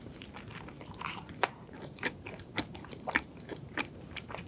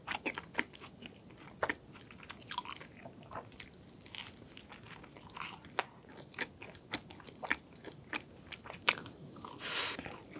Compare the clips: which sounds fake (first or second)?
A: first